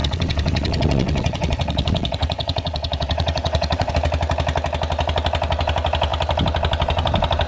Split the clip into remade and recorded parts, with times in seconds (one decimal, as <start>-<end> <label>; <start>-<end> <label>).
0.0-3.9 remade; 3.9-7.5 recorded